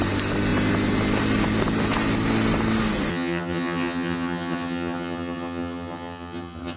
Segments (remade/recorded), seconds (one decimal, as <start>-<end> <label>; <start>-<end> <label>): 0.0-3.1 recorded; 3.1-6.8 remade